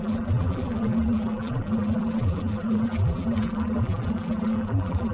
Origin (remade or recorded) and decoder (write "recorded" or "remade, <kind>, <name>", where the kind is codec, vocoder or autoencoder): remade, vocoder, BigVGAN v2